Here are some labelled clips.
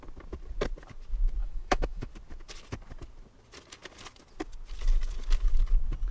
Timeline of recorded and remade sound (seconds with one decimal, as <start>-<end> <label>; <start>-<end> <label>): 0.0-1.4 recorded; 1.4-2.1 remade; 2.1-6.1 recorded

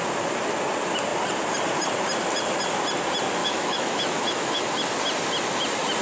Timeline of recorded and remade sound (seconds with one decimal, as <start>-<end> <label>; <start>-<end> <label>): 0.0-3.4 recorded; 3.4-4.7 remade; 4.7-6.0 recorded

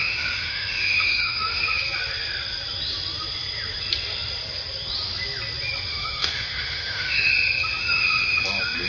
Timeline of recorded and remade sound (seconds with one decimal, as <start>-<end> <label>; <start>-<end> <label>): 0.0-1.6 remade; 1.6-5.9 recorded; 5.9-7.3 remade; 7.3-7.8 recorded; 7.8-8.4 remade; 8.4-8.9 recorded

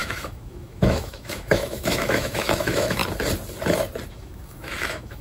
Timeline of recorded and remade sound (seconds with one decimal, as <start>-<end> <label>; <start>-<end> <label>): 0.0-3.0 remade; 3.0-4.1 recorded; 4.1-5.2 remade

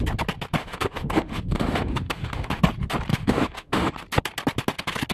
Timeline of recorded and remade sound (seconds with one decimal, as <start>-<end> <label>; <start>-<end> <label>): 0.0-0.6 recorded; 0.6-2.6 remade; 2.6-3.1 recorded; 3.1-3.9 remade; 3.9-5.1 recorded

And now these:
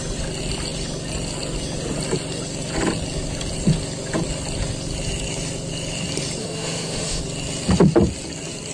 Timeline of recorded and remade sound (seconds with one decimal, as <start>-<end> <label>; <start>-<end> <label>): 0.0-6.4 recorded; 6.4-7.2 remade; 7.2-8.7 recorded